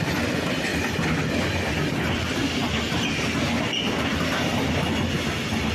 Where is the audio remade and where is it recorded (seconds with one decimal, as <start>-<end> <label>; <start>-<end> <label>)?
0.0-5.7 recorded